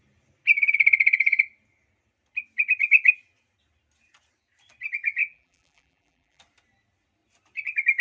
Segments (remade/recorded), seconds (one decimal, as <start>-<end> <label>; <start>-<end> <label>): 0.0-5.2 recorded; 5.2-6.4 remade; 6.4-8.0 recorded